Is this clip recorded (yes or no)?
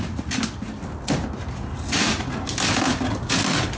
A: yes